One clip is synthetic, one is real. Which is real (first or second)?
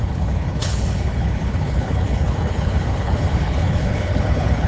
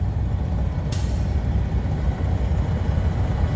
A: second